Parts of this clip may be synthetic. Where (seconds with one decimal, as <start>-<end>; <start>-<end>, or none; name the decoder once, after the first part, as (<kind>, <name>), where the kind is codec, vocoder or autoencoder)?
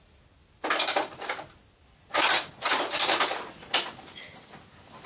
none